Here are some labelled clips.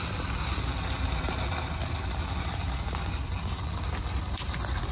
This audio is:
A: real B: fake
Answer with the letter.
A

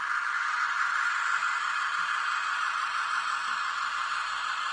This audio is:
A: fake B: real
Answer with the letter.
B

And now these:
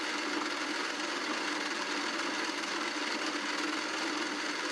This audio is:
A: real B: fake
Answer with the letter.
A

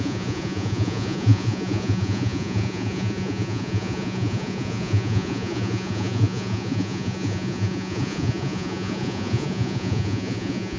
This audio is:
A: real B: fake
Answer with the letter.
B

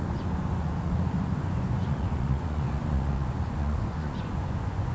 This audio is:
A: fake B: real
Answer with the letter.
A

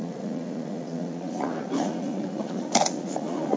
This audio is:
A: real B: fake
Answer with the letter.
B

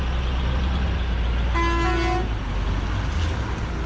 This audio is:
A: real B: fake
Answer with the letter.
A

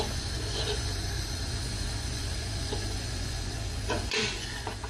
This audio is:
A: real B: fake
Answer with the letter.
B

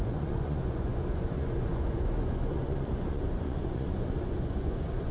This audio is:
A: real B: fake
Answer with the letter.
B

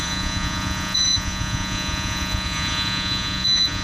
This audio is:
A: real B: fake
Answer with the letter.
B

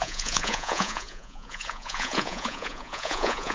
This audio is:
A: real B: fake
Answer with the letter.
B